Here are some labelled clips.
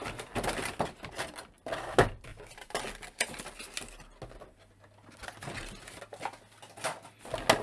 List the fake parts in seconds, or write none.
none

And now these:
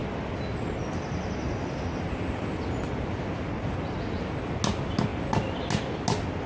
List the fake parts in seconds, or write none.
none

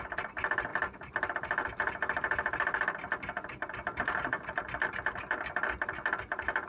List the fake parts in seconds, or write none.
0.0-6.7

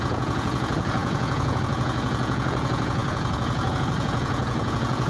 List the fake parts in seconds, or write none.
0.0-5.1

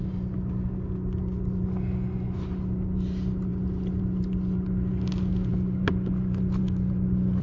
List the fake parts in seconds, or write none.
none

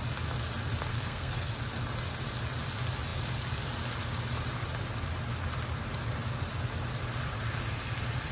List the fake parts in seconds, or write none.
0.9-1.5

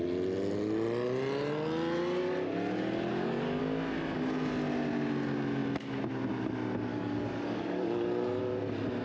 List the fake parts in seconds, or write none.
3.1-3.6; 6.9-8.4

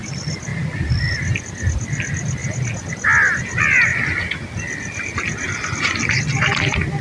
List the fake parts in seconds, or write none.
none